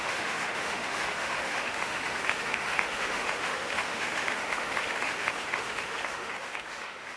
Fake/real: fake